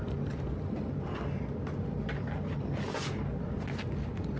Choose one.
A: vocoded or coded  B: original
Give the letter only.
B